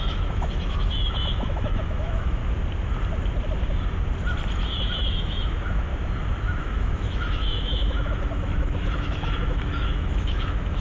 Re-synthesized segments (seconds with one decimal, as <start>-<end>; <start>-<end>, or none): 0.0-2.4; 4.7-5.9; 6.6-10.8